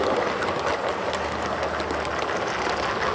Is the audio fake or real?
real